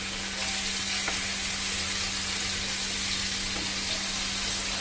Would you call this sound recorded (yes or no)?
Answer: yes